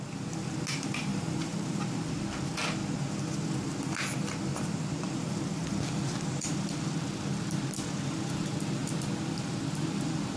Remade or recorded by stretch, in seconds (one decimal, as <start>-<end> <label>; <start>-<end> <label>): 0.0-1.1 recorded; 1.1-1.8 remade; 1.8-4.5 recorded; 4.5-5.3 remade; 5.3-10.4 recorded